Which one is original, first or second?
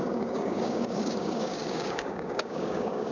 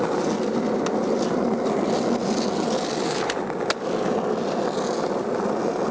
second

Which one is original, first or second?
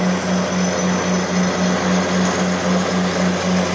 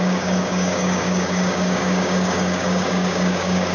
first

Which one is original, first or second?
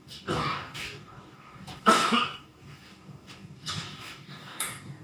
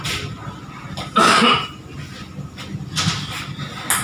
second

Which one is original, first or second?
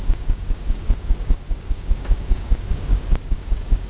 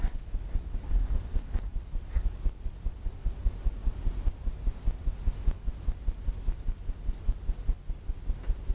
second